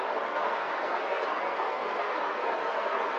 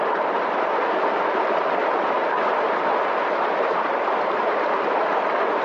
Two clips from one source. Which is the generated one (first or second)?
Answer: first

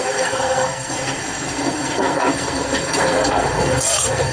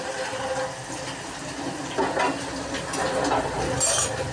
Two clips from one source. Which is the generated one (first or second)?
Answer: first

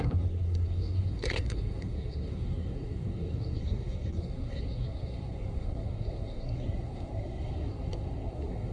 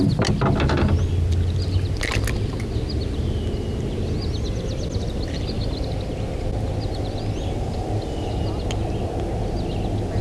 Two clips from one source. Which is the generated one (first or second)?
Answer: first